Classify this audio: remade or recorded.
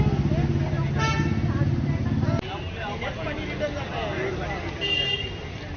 recorded